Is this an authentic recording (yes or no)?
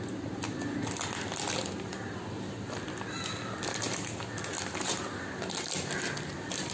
yes